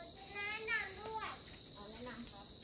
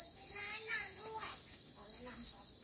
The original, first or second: first